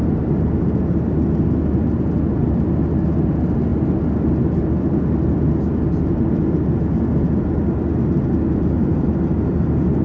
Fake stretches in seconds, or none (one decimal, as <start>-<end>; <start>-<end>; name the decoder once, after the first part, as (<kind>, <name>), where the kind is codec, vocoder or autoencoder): none